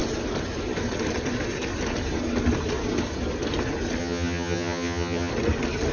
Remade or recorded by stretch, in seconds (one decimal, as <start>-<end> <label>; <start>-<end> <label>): 0.0-4.0 recorded; 4.0-5.3 remade; 5.3-5.9 recorded